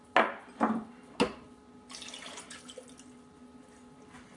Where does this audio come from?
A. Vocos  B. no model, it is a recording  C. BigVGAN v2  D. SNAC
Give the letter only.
B